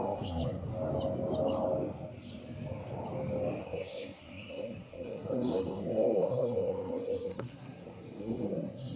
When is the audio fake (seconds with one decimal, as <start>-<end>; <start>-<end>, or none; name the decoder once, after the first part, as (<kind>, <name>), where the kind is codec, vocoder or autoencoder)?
0.0-0.7 (codec, SNAC); 3.6-9.0

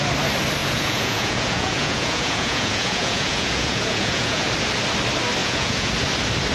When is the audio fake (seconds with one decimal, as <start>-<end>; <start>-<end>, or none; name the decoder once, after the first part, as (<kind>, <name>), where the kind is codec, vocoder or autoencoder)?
0.6-4.5 (vocoder, Vocos); 5.4-5.9

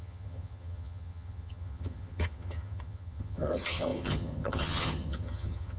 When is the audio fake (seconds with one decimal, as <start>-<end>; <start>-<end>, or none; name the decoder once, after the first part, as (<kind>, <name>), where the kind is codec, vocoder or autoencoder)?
0.0-5.8 (vocoder, HiFi-GAN)

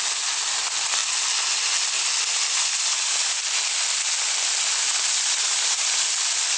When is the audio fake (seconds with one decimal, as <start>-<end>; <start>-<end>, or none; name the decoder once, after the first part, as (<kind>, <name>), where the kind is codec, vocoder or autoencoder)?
none

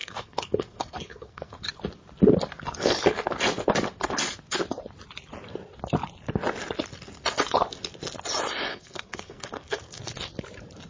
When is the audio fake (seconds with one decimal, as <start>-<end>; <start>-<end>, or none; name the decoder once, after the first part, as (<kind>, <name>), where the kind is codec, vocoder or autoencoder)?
0.0-1.7 (codec, SNAC); 8.7-10.0